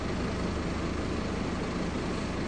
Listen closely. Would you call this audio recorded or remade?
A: recorded